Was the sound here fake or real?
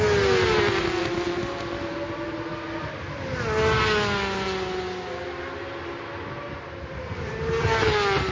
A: real